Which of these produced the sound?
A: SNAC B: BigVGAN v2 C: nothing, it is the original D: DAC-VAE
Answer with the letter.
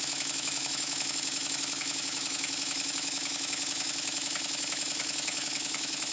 D